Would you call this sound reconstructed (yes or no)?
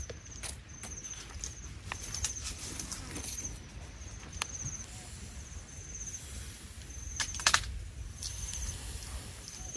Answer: no